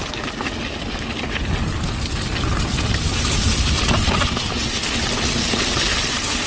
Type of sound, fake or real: real